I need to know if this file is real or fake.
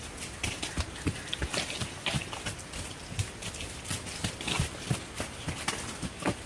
real